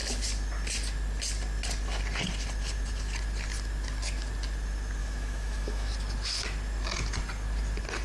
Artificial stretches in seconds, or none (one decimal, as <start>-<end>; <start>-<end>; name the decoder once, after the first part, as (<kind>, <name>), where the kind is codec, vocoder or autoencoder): 5.0-5.9 (autoencoder, DAC-VAE)